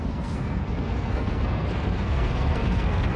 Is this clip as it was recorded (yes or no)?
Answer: no